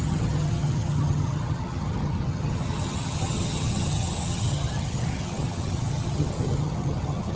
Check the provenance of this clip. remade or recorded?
remade